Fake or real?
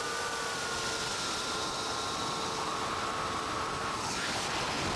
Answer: real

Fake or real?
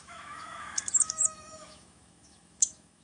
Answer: fake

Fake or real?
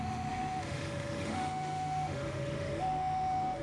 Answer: fake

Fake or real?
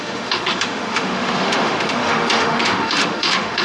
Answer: fake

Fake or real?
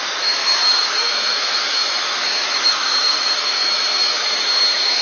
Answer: fake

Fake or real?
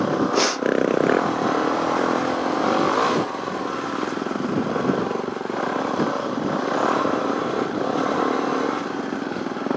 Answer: real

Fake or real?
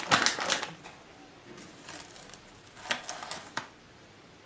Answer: real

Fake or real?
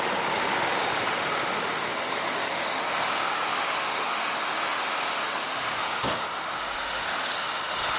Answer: fake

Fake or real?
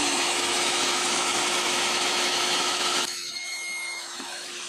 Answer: fake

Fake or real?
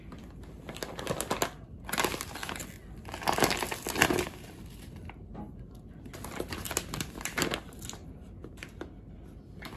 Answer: real